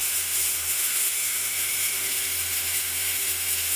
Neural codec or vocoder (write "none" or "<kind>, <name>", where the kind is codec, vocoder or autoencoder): autoencoder, DAC-VAE